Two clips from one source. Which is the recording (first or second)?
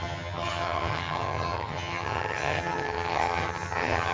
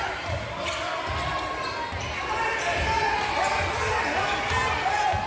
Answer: second